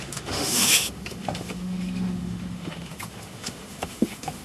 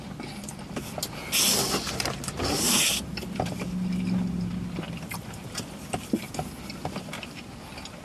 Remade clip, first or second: first